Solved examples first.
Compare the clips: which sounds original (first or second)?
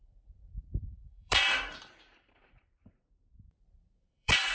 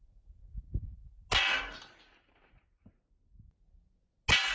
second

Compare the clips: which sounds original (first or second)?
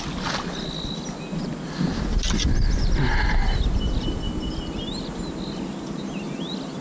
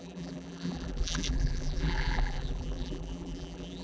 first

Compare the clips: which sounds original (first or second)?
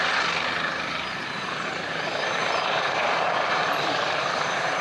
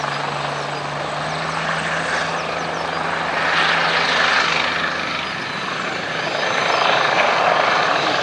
second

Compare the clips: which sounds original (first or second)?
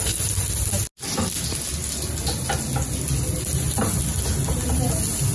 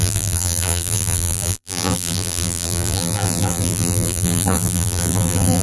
first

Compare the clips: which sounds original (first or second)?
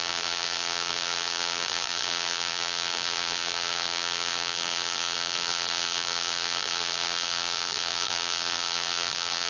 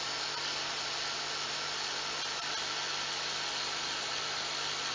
second